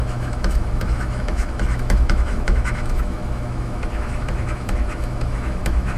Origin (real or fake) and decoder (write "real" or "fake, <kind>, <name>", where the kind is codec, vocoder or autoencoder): fake, autoencoder, DAC-VAE